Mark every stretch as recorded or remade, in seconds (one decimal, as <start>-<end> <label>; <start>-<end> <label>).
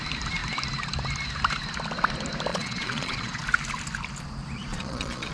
0.0-2.5 recorded; 2.5-3.4 remade; 3.4-4.7 recorded; 4.7-5.3 remade